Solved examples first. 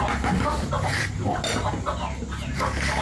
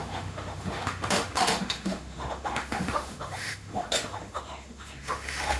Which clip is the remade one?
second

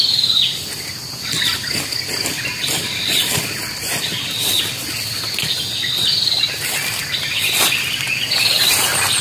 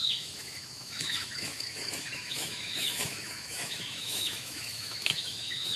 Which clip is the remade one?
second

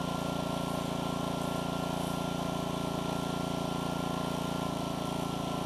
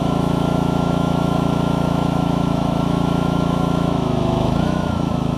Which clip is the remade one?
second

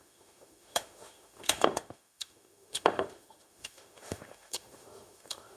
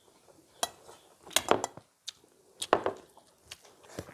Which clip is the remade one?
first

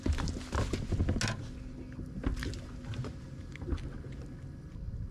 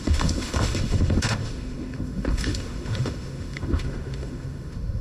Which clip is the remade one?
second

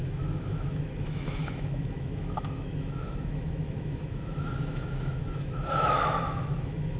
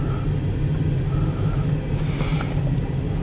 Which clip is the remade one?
first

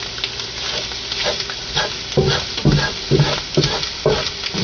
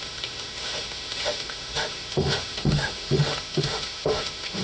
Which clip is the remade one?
second